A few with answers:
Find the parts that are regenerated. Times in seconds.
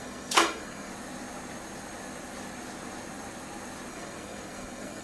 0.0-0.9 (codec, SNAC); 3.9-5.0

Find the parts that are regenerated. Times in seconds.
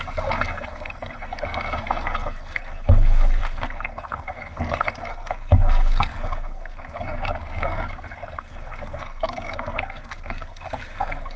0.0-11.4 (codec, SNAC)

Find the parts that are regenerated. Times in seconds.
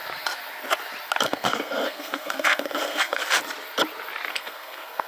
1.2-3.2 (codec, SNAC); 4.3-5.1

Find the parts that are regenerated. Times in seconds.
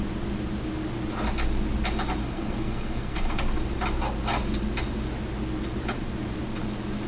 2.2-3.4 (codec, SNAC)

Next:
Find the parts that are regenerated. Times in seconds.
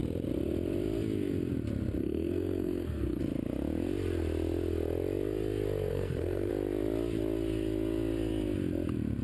2.0-3.2 (codec, SNAC); 5.9-6.5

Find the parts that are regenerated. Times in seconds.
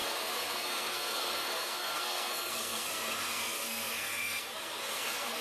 0.0-5.4 (codec, SNAC)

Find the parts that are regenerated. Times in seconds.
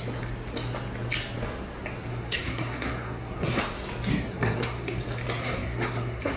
2.1-3.6 (codec, SNAC); 4.1-5.0; 5.4-6.4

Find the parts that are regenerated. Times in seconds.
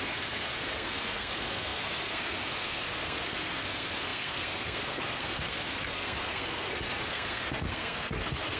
0.0-8.6 (codec, SNAC)